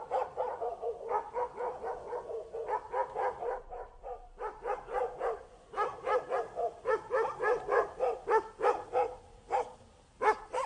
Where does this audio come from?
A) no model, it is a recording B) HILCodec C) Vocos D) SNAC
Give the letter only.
A